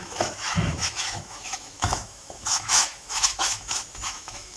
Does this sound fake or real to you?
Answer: fake